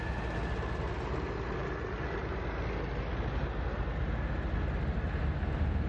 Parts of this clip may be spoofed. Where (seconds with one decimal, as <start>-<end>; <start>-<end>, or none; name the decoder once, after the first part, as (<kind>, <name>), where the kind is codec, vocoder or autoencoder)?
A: none